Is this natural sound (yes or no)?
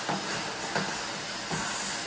yes